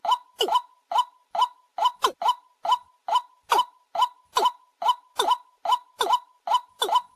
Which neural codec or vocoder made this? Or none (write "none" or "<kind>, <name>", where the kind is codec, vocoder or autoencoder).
none